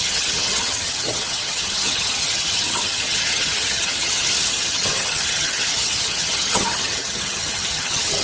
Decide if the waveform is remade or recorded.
remade